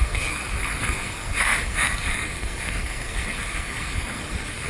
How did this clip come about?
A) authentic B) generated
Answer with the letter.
B